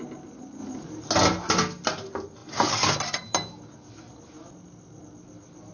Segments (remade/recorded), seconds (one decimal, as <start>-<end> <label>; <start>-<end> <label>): 0.0-5.7 recorded